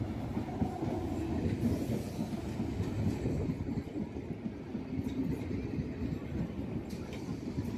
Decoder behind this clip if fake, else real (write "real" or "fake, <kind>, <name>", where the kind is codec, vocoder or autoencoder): real